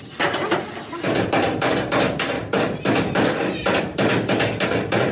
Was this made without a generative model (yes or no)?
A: no